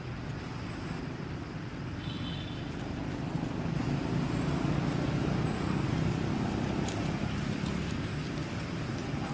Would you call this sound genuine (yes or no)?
yes